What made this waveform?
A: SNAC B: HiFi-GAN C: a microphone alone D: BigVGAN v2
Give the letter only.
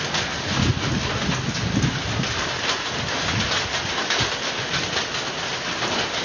C